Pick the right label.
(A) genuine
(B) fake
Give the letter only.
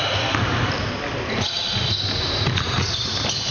A